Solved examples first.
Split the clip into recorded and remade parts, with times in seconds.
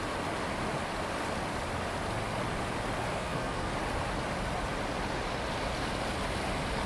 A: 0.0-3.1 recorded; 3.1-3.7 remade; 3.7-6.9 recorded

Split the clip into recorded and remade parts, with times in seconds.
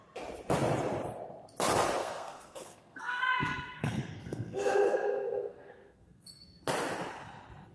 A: 0.0-2.0 recorded; 2.0-6.6 remade; 6.6-7.7 recorded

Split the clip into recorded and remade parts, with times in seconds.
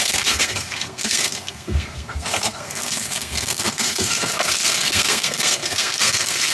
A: 0.0-6.5 remade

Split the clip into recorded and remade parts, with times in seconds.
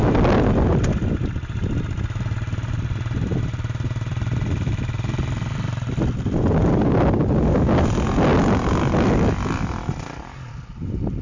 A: 0.0-11.2 recorded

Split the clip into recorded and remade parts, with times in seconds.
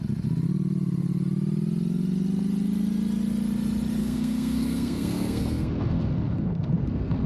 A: 0.0-4.0 recorded; 4.0-7.3 remade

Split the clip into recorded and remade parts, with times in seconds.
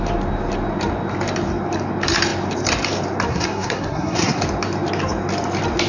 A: 0.0-3.3 recorded; 3.3-4.4 remade; 4.4-5.9 recorded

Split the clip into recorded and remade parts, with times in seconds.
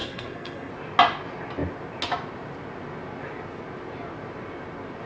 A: 0.0-0.7 remade; 0.7-5.1 recorded